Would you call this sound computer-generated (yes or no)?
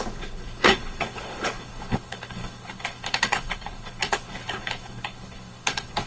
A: yes